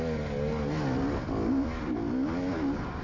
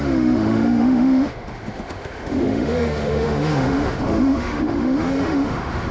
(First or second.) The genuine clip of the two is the first